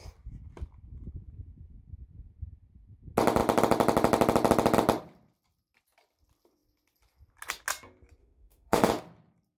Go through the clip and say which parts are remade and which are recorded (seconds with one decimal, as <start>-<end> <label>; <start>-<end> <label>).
0.0-8.2 recorded; 8.2-8.9 remade; 8.9-9.6 recorded